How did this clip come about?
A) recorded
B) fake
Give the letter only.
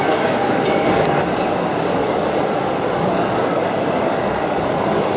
B